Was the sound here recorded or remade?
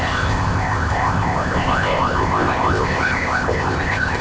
remade